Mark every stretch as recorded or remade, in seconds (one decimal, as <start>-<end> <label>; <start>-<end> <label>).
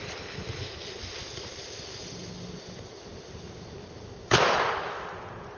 0.0-5.6 recorded